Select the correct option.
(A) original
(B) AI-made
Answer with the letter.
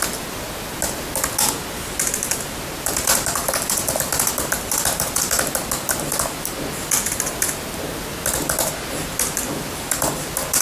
A